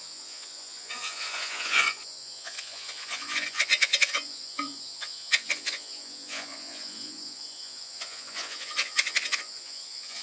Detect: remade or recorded remade